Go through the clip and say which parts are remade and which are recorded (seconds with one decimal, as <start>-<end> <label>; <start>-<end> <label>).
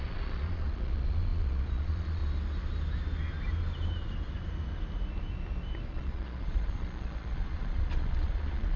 0.0-2.2 remade; 2.2-5.9 recorded; 5.9-8.8 remade